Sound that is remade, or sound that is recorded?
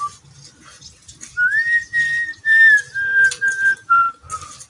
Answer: recorded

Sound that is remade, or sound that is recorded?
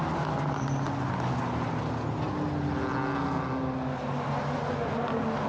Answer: recorded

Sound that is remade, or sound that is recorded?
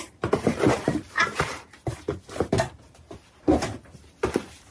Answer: remade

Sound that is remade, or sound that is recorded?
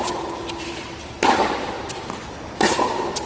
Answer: recorded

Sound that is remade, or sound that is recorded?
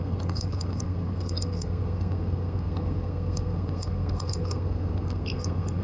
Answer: remade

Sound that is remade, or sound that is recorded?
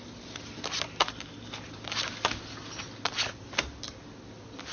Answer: recorded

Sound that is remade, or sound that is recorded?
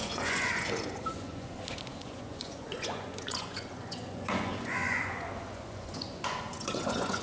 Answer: remade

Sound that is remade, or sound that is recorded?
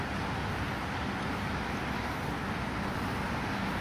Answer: recorded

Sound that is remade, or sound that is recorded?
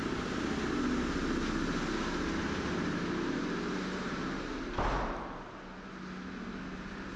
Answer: recorded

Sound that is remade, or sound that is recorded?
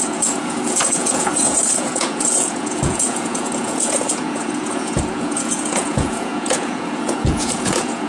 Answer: remade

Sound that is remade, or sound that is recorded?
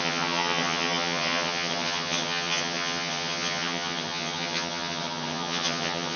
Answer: remade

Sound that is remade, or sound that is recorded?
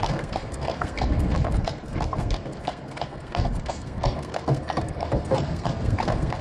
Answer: remade